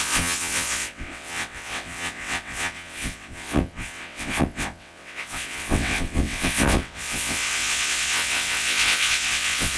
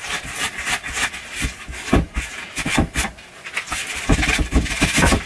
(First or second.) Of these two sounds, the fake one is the first